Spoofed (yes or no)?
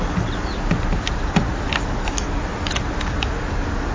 no